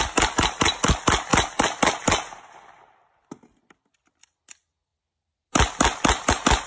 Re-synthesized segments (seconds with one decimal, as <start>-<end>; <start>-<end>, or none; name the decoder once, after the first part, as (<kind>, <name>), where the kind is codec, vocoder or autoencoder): none